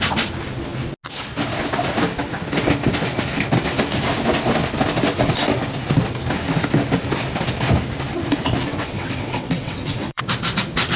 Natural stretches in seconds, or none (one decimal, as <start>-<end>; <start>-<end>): 0.0-8.7; 10.2-11.0